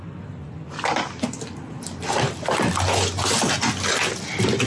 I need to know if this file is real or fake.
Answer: real